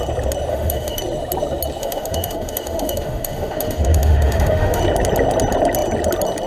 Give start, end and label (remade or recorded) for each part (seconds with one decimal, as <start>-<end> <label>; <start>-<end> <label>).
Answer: 0.0-0.5 recorded; 0.5-1.0 remade; 1.0-1.8 recorded; 1.8-4.8 remade; 4.8-6.5 recorded